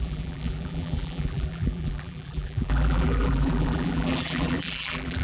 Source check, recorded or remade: remade